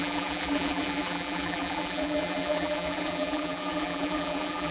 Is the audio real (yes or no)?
no